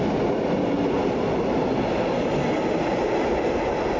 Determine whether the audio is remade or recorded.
recorded